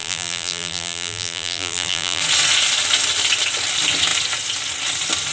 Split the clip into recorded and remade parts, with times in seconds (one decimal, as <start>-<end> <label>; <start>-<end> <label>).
0.0-2.2 remade; 2.2-5.3 recorded